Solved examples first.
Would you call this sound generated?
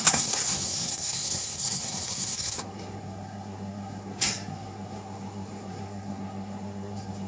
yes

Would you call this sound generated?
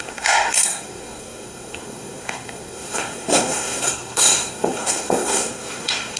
yes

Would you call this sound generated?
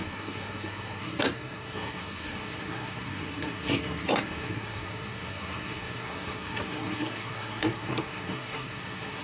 yes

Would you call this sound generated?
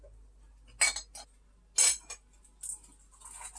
no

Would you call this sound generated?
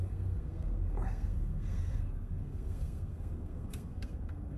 yes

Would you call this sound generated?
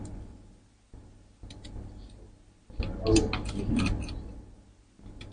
no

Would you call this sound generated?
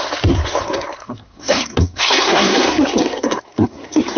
yes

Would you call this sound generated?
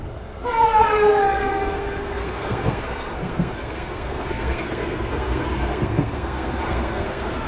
yes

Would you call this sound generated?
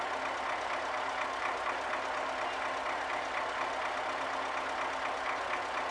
no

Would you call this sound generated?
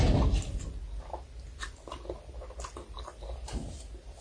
no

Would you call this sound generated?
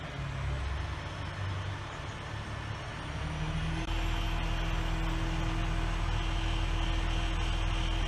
no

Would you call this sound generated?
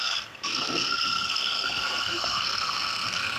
yes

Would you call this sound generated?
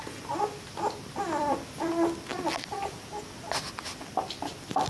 no